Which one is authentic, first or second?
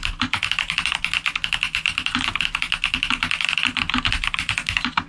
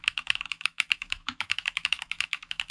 first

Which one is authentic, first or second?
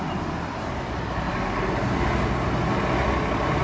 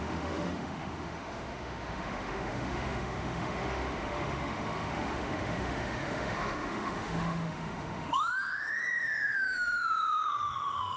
first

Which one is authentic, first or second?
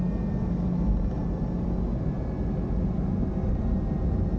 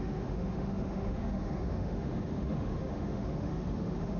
first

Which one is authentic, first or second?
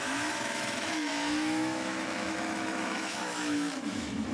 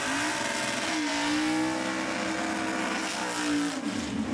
second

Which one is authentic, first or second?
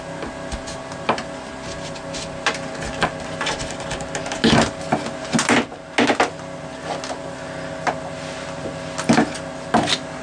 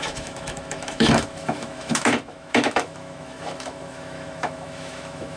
first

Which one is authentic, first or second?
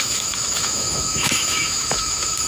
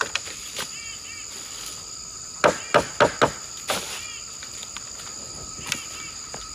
second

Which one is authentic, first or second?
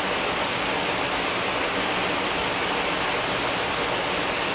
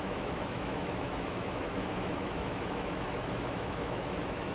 first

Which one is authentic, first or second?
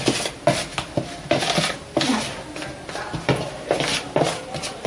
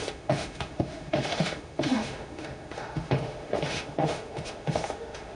first